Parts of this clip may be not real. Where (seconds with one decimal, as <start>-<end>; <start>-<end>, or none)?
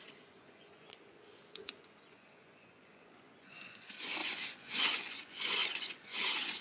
0.0-6.6